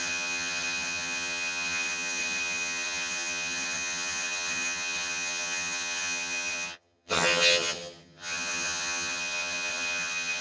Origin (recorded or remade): remade